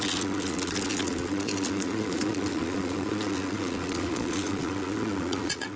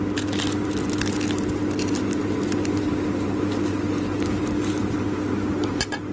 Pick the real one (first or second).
second